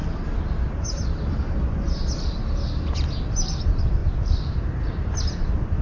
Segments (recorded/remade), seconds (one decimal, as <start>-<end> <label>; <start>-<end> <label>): 0.0-4.0 recorded; 4.0-4.8 remade; 4.8-5.8 recorded